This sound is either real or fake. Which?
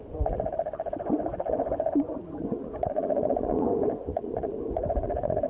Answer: fake